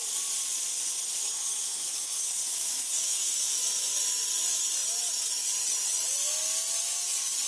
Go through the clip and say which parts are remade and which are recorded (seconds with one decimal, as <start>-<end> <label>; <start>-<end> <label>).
0.0-1.2 recorded; 1.2-3.6 remade; 3.6-7.5 recorded